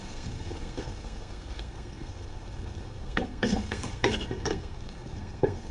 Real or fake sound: fake